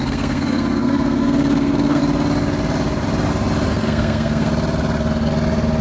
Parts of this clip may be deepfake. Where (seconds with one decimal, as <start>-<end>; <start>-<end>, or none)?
0.0-2.0; 3.7-4.5